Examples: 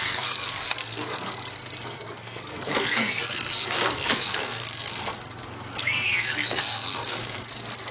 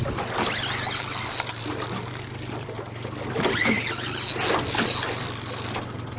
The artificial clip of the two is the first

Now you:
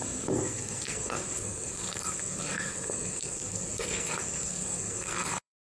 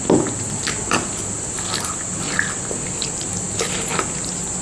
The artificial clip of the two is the first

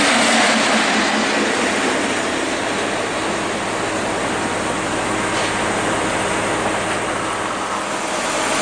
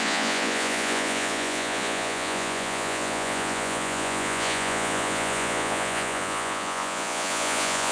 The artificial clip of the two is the second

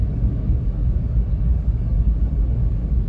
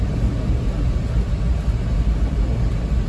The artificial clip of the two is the first